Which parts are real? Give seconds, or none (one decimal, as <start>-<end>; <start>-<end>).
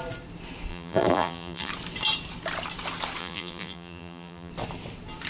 0.0-0.7; 1.7-3.2; 4.5-5.3